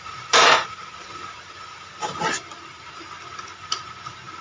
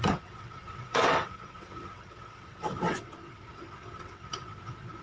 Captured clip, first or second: first